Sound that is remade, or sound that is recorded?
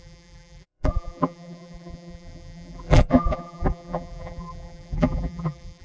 remade